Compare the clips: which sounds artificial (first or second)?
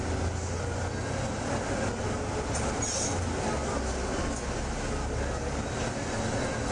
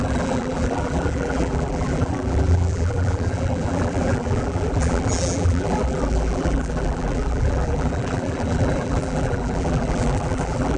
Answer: second